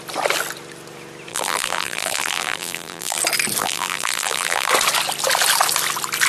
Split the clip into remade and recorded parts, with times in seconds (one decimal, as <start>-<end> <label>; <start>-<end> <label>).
0.0-1.3 recorded; 1.3-3.2 remade; 3.2-3.6 recorded; 3.6-4.7 remade; 4.7-6.3 recorded